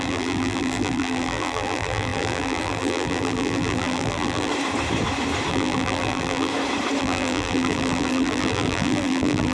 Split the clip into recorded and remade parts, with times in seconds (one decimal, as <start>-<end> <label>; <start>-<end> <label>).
0.0-4.5 remade; 4.5-5.5 recorded; 5.5-6.5 remade; 6.5-7.0 recorded; 7.0-9.5 remade